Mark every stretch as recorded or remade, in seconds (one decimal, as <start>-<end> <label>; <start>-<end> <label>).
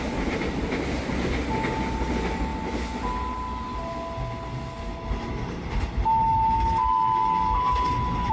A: 0.0-8.3 recorded